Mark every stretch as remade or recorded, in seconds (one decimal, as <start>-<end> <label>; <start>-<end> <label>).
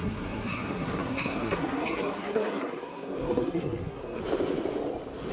0.0-4.2 remade; 4.2-5.3 recorded